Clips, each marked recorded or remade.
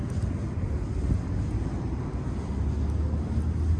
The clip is recorded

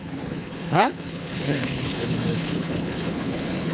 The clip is remade